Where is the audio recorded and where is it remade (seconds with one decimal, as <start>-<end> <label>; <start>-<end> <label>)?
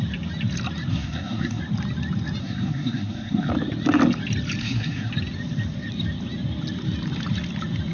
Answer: 0.0-0.9 recorded; 0.9-1.6 remade; 1.6-2.4 recorded; 2.4-3.5 remade; 3.5-4.6 recorded; 4.6-5.1 remade; 5.1-7.9 recorded